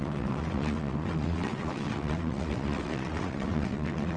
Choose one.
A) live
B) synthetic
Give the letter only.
B